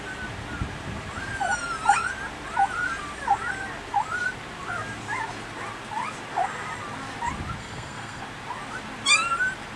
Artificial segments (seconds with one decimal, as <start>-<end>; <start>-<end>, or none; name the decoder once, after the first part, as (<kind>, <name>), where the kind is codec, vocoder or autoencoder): 7.6-8.2 (codec, SNAC)